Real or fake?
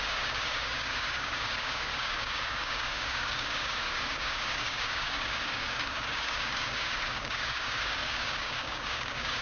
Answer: fake